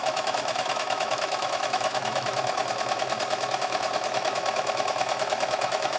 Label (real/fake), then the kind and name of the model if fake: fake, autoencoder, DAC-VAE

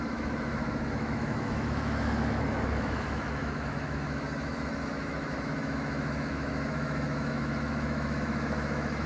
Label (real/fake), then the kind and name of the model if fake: fake, autoencoder, DAC-VAE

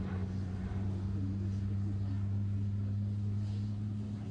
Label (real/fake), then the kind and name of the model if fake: real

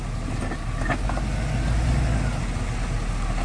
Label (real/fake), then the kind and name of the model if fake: real